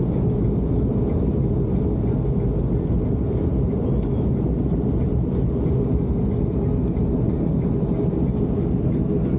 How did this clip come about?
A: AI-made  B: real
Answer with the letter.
B